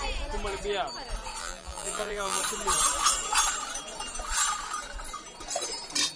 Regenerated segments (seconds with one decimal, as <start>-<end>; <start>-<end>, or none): 1.4-2.4